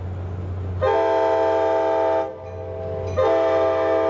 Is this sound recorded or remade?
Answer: recorded